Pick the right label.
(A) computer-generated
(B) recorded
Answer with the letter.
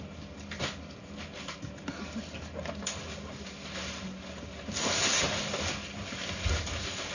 B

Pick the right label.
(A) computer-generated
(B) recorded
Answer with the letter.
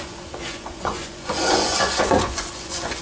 A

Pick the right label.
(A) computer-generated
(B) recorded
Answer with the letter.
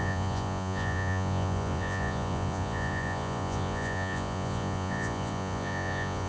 A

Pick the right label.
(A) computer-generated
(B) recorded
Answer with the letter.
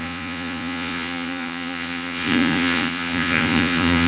A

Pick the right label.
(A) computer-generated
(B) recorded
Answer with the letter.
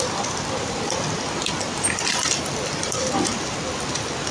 B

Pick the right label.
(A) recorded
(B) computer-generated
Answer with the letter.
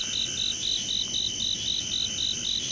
A